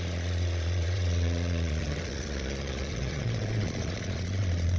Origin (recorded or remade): remade